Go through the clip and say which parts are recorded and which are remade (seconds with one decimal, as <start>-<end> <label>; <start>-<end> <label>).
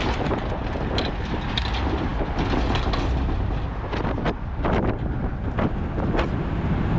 0.0-7.0 recorded